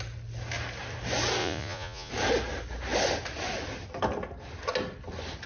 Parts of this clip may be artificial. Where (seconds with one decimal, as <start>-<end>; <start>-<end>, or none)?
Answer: 1.4-2.1